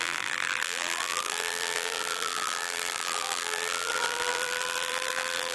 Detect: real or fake fake